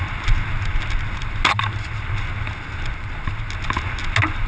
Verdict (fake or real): real